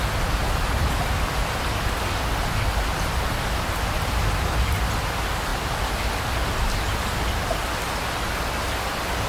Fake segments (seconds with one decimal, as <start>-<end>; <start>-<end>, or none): 0.4-1.7; 5.5-6.2